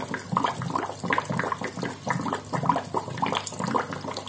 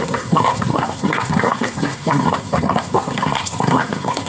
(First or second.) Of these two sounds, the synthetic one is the second